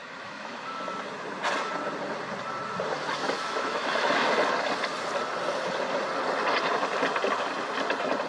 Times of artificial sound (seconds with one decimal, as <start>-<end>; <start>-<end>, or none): 0.0-0.6; 3.2-4.3